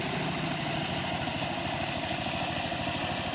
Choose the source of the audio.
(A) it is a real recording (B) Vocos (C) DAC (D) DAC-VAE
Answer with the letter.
A